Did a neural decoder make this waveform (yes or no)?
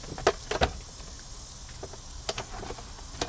no